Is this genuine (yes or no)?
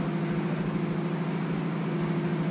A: yes